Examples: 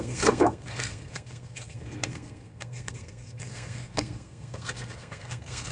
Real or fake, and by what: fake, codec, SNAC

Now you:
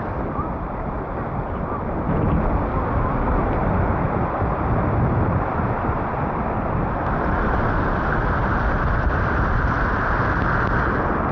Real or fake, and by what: real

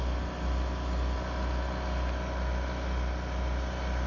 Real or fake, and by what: real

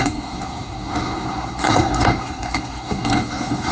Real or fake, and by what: fake, codec, SNAC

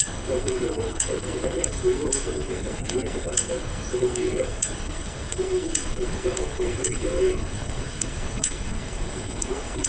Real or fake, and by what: fake, codec, SNAC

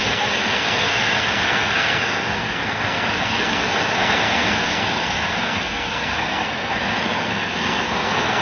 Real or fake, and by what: fake, codec, SNAC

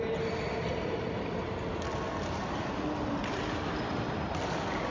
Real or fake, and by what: real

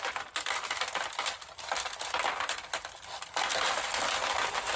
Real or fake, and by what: real